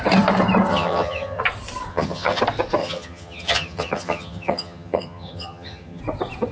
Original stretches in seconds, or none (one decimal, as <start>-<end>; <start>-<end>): 0.0-0.7; 1.4-1.9; 2.4-2.8; 6.0-6.5